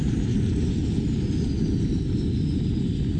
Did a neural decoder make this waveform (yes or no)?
no